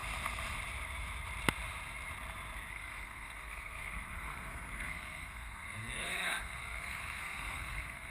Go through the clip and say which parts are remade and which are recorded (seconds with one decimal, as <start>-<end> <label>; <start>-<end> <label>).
0.0-2.7 recorded; 2.7-8.1 remade